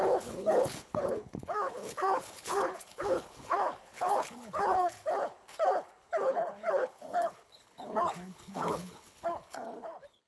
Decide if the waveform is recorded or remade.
remade